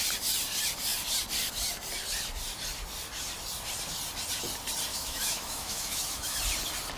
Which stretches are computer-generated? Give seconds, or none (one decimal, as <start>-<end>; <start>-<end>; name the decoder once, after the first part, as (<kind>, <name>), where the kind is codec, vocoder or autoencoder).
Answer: 4.9-6.4 (autoencoder, DAC-VAE)